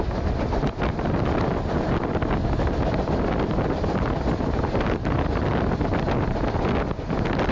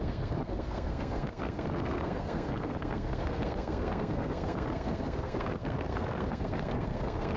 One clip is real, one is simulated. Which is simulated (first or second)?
second